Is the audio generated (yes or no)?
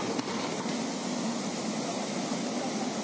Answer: no